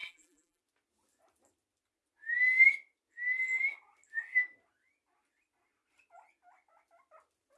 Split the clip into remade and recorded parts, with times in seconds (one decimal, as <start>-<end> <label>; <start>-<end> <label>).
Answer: 0.0-0.6 remade; 0.6-7.6 recorded